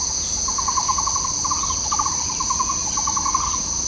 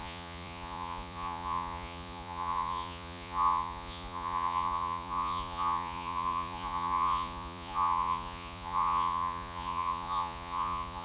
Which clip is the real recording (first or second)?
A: first